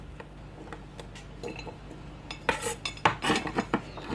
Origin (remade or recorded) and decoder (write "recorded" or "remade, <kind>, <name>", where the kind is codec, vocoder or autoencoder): recorded